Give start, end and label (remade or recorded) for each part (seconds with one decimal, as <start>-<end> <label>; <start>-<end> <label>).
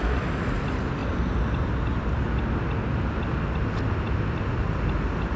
0.0-5.4 recorded